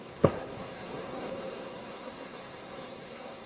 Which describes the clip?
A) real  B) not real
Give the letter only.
B